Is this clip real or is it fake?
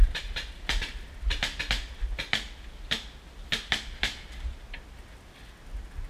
real